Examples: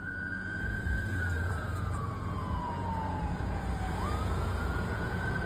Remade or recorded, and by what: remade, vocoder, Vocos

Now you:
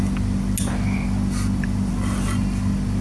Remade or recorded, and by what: recorded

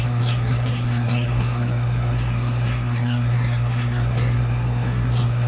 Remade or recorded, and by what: remade, codec, SNAC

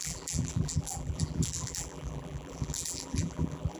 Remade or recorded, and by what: remade, vocoder, BigVGAN v2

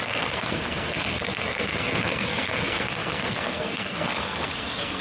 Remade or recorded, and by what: remade, codec, SNAC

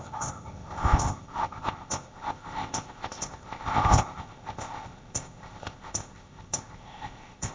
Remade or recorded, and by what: remade, codec, ZipCodec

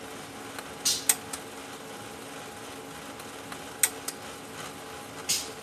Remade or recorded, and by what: recorded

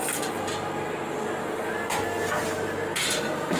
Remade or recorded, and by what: recorded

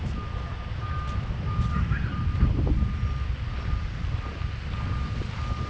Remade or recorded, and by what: recorded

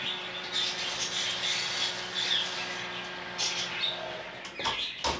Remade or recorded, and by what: recorded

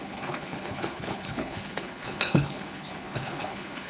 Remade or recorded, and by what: remade, codec, HILCodec